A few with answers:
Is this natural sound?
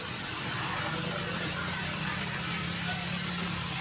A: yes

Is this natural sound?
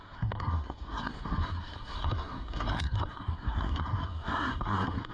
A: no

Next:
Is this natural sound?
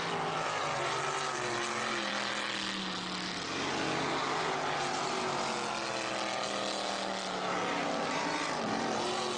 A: yes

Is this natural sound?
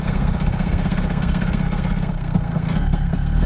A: no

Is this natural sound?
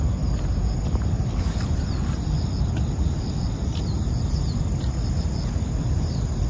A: yes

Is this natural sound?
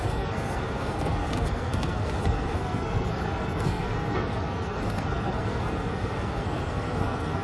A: no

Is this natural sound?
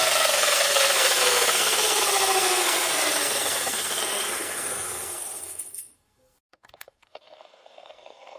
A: no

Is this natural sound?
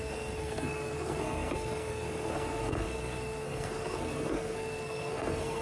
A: no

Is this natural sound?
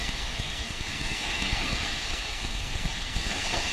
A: no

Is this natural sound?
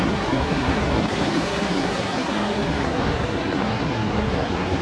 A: no